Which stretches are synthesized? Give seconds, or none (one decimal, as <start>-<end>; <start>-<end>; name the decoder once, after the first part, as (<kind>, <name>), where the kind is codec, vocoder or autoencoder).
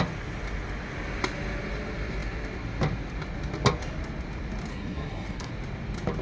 4.7-5.5 (codec, SNAC)